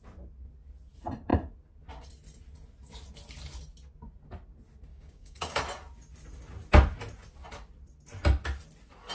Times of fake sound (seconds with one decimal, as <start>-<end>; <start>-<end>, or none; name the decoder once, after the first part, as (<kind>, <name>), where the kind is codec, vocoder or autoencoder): 4.9-5.6 (codec, DAC)